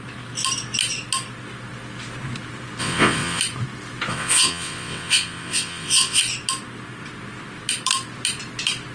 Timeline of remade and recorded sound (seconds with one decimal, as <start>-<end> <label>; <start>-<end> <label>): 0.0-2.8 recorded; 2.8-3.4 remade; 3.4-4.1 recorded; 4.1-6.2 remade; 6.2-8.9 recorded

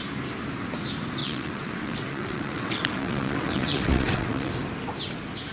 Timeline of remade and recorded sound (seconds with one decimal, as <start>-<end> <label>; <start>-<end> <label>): 0.0-1.2 recorded; 1.2-4.5 remade; 4.5-5.5 recorded

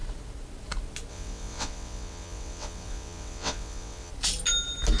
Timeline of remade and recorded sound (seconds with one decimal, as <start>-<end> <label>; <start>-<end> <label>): 0.0-1.1 recorded; 1.1-4.1 remade; 4.1-5.0 recorded

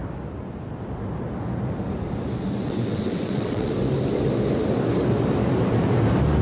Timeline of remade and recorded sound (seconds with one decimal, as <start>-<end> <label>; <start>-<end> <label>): 0.0-2.6 recorded; 2.6-3.7 remade; 3.7-6.4 recorded

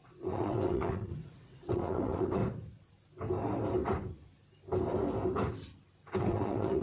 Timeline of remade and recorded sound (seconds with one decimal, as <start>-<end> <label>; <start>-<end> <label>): 0.0-2.4 remade; 2.4-6.2 recorded; 6.2-6.8 remade

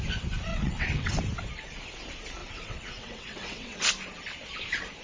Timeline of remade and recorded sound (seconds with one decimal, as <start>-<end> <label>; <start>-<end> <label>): 0.0-0.5 recorded; 0.5-1.2 remade; 1.2-2.4 recorded; 2.4-3.9 remade; 3.9-5.0 recorded

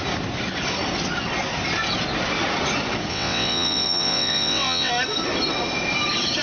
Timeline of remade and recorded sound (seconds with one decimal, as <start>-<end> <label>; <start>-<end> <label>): 0.0-3.1 recorded; 3.1-4.9 remade; 4.9-6.4 recorded